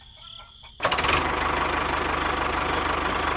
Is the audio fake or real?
real